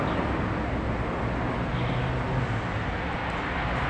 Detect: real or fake real